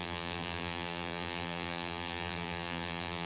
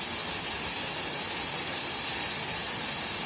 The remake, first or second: first